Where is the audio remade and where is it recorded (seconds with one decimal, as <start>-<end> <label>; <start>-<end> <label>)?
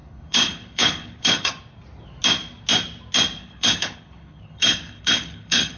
0.0-1.5 remade; 1.5-3.4 recorded; 3.4-5.8 remade